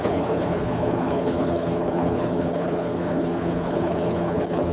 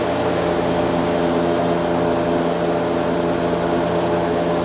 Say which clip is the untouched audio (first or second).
second